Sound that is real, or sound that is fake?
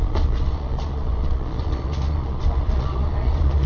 fake